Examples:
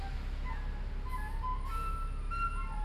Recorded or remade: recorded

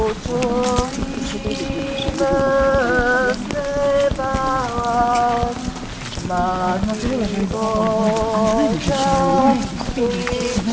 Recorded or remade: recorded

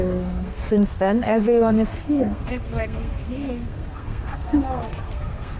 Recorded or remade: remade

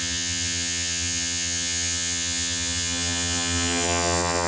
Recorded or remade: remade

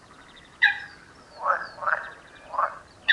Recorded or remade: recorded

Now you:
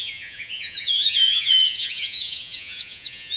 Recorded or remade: remade